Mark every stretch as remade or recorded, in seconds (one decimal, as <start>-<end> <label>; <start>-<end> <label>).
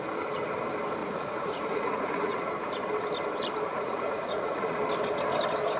0.0-1.0 recorded; 1.0-2.5 remade; 2.5-3.7 recorded; 3.7-4.8 remade; 4.8-5.8 recorded